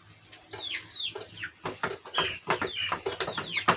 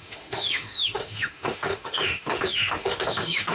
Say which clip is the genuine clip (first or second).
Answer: first